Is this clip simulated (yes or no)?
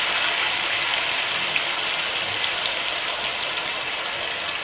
no